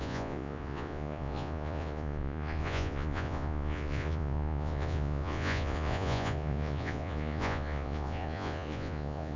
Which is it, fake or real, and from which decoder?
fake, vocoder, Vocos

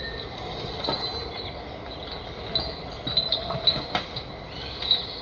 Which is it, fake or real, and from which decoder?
real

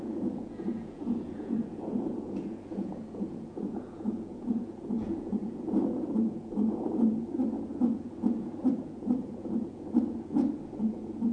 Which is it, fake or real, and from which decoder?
fake, vocoder, Vocos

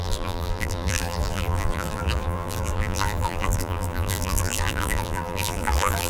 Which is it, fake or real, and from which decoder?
fake, vocoder, BigVGAN v2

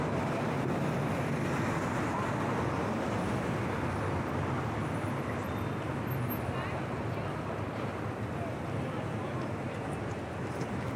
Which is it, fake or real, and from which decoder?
real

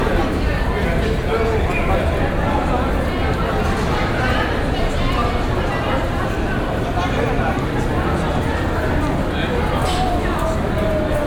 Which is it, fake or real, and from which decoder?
real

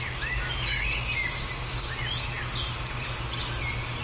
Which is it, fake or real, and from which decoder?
real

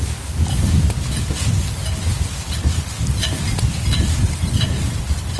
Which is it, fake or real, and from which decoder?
real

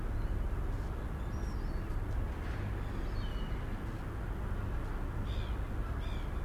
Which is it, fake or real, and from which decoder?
real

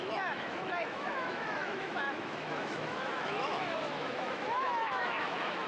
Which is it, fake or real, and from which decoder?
fake, autoencoder, DAC-VAE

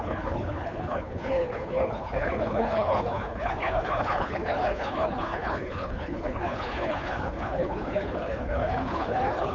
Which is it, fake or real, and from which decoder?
fake, codec, HILCodec